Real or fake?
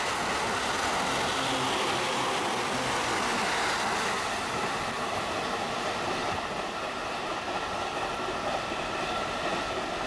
real